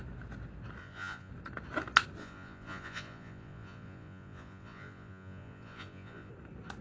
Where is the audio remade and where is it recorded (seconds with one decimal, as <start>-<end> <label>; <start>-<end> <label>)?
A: 0.0-0.8 recorded; 0.8-1.3 remade; 1.3-2.2 recorded; 2.2-6.3 remade; 6.3-6.8 recorded

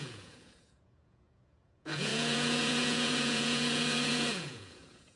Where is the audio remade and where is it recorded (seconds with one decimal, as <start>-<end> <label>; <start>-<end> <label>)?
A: 0.0-5.2 remade

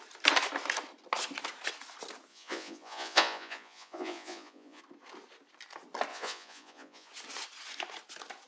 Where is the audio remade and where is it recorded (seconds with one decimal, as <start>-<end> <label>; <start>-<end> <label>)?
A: 0.0-2.3 recorded; 2.3-4.8 remade; 4.8-6.1 recorded; 6.1-7.1 remade; 7.1-8.5 recorded

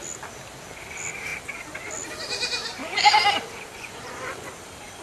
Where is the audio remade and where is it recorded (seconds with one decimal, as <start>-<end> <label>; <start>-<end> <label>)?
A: 0.0-2.6 recorded; 2.6-3.1 remade; 3.1-3.7 recorded; 3.7-4.5 remade; 4.5-5.0 recorded

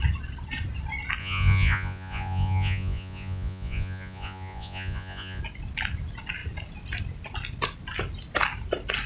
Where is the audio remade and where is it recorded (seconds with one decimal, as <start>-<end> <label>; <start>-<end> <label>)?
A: 0.0-1.2 recorded; 1.2-5.4 remade; 5.4-9.1 recorded

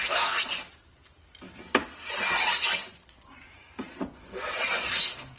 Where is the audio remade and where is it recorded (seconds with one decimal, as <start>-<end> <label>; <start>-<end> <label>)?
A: 0.0-2.8 recorded; 2.8-5.0 remade; 5.0-5.4 recorded

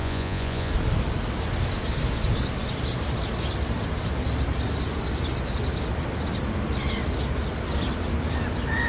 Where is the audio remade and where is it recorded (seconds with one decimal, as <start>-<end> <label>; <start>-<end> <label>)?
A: 0.0-0.7 remade; 0.7-8.9 recorded